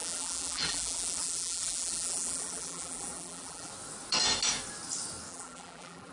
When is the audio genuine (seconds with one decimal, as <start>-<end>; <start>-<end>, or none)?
3.7-5.3